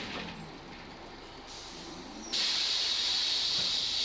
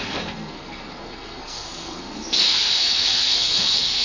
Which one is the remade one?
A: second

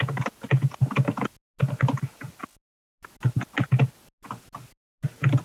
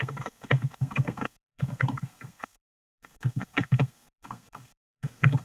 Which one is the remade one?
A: second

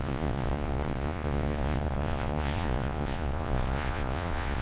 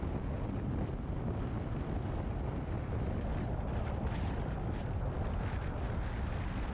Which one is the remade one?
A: first